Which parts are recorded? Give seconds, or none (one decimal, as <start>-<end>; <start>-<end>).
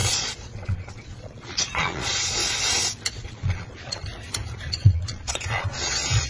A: 2.4-3.1; 4.0-4.7